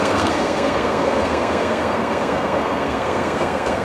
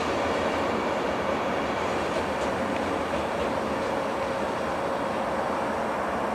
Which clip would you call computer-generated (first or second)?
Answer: first